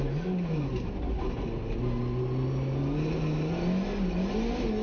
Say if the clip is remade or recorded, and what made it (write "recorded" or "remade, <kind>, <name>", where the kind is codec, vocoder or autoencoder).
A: recorded